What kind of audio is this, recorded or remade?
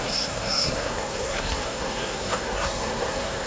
remade